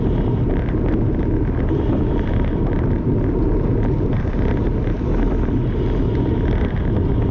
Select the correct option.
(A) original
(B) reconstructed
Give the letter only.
A